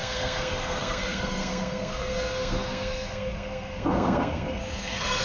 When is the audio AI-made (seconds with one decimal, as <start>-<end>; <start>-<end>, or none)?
0.0-5.2